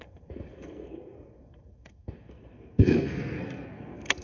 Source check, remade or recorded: remade